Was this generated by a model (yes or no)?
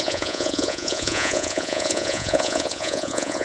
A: yes